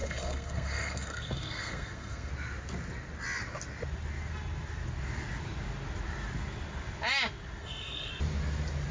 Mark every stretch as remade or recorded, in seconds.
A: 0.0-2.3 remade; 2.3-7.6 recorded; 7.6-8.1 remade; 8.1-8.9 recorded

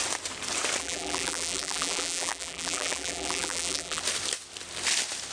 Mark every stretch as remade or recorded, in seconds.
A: 0.0-0.8 recorded; 0.8-4.0 remade; 4.0-5.3 recorded

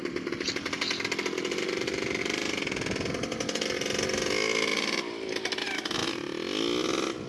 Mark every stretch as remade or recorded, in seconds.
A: 0.0-7.3 recorded

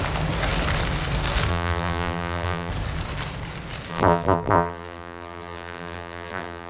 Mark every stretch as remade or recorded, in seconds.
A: 0.0-1.5 recorded; 1.5-2.7 remade; 2.7-3.9 recorded; 3.9-6.7 remade

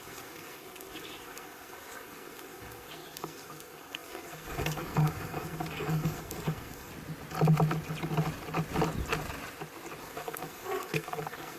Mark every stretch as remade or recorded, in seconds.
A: 0.0-6.9 remade; 6.9-10.0 recorded; 10.0-11.6 remade